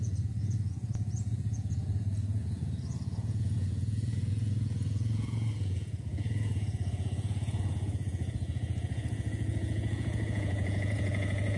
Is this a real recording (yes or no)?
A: no